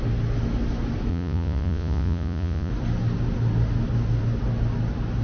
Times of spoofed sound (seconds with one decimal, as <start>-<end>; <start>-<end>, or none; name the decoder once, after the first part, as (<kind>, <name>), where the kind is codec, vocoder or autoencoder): 1.1-2.7 (vocoder, Vocos)